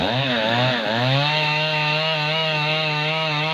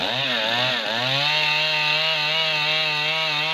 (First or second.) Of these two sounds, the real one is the second